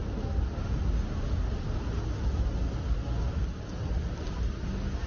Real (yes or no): yes